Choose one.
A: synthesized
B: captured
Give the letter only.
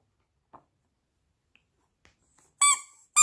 B